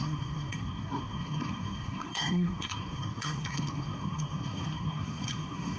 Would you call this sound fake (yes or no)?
yes